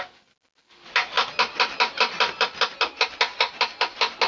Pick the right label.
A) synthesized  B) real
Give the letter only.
B